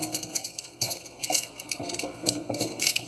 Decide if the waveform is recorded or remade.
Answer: remade